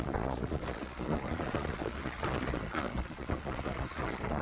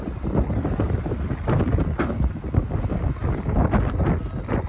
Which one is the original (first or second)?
second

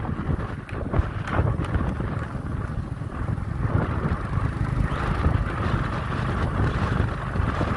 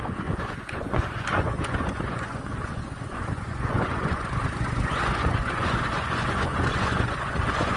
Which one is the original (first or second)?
first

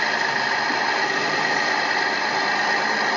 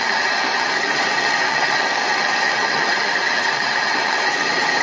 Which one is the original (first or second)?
first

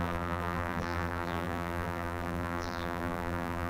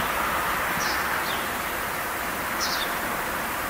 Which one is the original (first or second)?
second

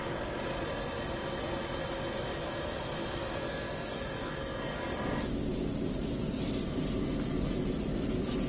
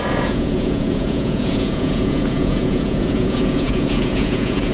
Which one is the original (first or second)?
first